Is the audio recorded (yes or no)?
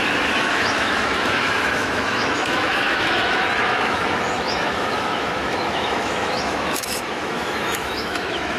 no